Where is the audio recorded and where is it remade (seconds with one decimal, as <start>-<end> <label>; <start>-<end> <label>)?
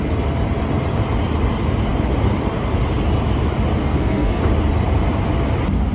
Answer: 0.0-3.8 recorded; 3.8-4.4 remade; 4.4-5.9 recorded